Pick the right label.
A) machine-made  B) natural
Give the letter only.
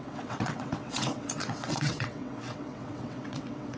A